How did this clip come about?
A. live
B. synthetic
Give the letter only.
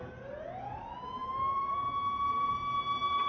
A